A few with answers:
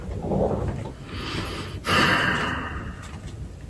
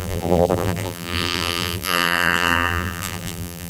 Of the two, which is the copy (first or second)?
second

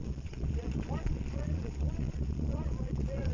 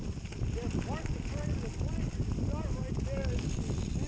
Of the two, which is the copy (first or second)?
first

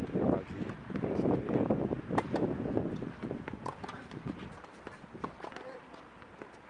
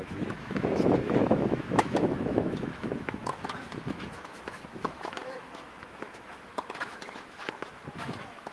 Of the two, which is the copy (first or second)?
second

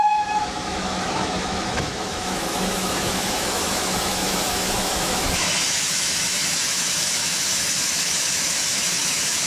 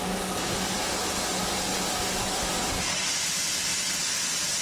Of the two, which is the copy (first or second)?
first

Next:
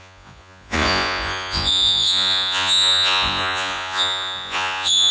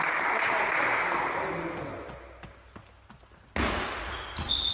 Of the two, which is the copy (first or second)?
first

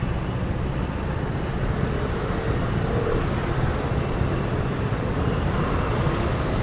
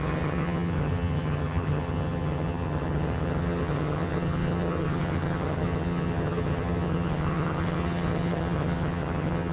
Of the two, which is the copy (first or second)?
second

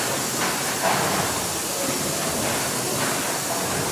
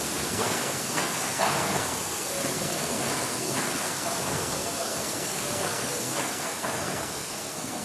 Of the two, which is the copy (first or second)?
second